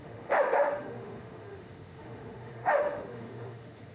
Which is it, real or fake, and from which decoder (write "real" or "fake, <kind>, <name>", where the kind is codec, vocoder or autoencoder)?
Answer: fake, autoencoder, DAC-VAE